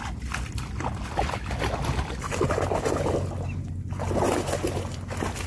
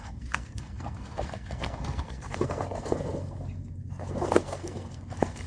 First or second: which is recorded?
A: first